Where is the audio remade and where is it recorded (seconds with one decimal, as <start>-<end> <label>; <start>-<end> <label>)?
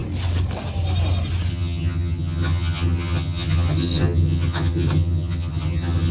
0.0-1.5 recorded; 1.5-6.1 remade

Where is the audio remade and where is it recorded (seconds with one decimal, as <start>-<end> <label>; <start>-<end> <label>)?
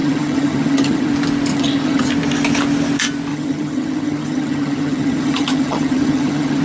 0.0-1.1 remade; 1.1-1.5 recorded; 1.5-2.1 remade; 2.1-3.3 recorded; 3.3-6.6 remade